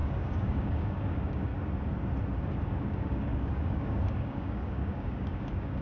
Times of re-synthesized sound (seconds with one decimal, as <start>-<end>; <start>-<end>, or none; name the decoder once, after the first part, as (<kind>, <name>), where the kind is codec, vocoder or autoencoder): 0.0-1.5 (codec, DAC); 2.4-5.8